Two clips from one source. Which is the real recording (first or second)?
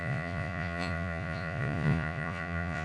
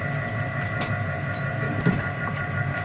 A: second